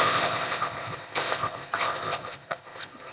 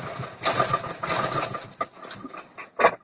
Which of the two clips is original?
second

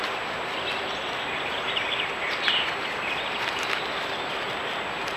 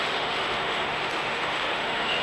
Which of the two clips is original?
first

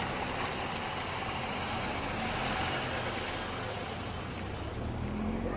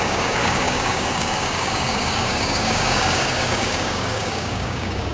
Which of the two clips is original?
first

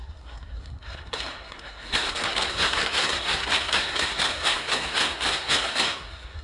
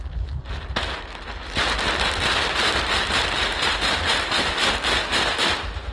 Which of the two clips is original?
second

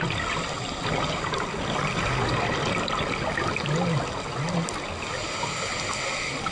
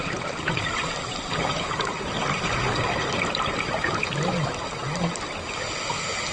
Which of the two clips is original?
first